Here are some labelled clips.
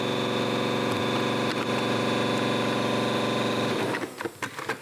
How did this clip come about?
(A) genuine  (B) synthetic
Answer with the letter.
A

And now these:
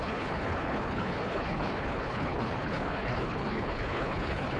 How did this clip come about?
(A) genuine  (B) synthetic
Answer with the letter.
B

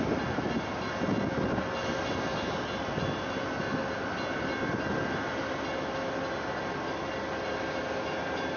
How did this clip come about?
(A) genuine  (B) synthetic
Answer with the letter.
A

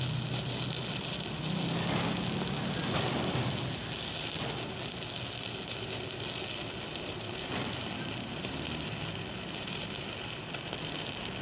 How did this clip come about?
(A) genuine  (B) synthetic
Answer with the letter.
A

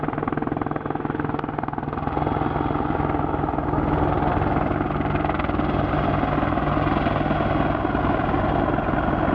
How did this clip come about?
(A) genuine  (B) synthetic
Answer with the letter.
A